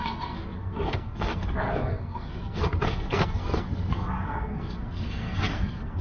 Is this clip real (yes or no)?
no